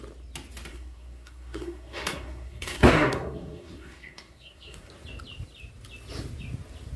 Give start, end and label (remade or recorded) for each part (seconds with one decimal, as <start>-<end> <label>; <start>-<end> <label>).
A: 0.0-0.7 recorded; 0.7-4.9 remade; 4.9-7.0 recorded